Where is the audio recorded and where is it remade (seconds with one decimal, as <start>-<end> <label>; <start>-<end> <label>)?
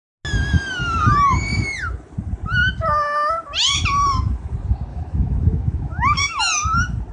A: 0.0-4.9 recorded; 4.9-6.4 remade; 6.4-7.1 recorded